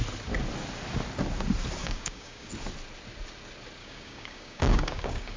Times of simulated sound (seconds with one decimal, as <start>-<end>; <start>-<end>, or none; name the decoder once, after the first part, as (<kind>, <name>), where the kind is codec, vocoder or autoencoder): 1.8-2.5 (codec, DAC); 3.8-5.4

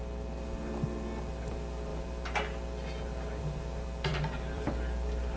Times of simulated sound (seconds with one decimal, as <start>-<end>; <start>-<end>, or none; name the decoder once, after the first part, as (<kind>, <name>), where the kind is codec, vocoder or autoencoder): 4.1-5.4 (vocoder, BigVGAN v2)

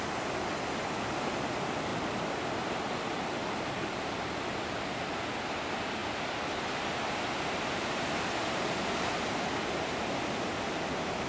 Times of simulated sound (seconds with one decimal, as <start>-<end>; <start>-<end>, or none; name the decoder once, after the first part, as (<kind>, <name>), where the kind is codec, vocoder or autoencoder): none